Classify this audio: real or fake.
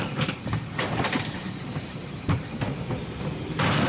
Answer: fake